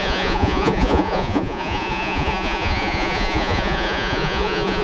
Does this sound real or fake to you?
fake